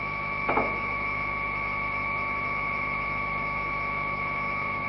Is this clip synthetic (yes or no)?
yes